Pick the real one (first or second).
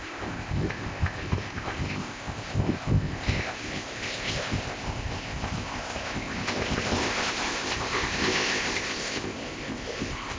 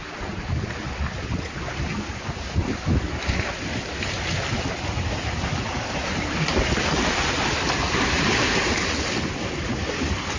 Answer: second